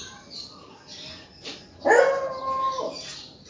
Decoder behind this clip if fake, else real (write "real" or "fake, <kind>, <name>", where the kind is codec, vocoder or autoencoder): real